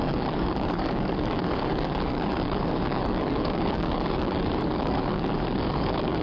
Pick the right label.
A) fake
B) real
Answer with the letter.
A